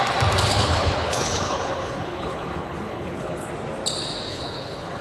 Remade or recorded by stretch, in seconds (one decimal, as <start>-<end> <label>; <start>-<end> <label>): 0.0-0.5 recorded; 0.5-3.5 remade; 3.5-4.3 recorded; 4.3-5.0 remade